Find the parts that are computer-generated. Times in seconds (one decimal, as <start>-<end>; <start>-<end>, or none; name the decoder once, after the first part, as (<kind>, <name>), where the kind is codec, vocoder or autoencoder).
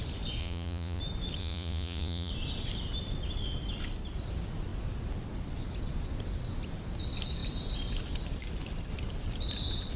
0.4-1.0 (vocoder, Vocos); 1.4-2.3